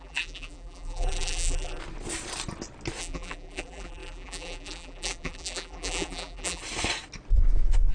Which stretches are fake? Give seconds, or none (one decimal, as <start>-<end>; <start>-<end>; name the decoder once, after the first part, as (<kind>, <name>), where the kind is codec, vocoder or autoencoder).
0.0-1.8 (vocoder, BigVGAN v2); 3.0-6.6